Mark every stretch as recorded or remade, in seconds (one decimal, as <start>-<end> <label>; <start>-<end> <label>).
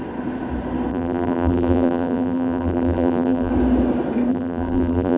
0.0-0.9 recorded; 0.9-3.5 remade; 3.5-4.3 recorded; 4.3-5.2 remade